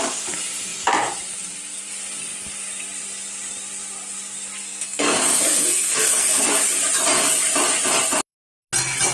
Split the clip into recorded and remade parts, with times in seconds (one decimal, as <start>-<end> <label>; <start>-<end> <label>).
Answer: 0.0-4.6 recorded; 4.6-6.5 remade; 6.5-9.1 recorded